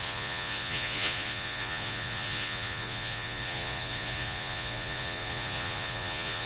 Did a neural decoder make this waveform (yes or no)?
yes